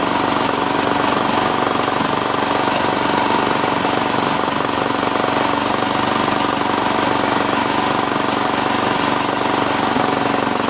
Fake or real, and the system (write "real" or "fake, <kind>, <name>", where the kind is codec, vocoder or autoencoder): real